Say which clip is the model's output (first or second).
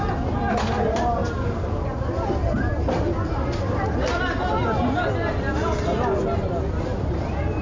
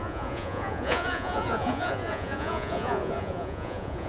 second